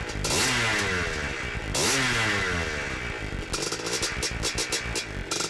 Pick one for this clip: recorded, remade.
recorded